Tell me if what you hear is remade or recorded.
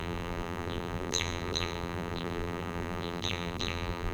remade